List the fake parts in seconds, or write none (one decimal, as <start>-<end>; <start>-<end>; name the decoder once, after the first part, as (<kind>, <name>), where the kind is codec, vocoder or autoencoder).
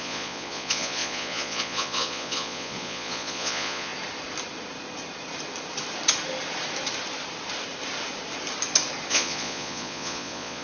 0.0-3.9 (vocoder, Vocos); 9.1-10.6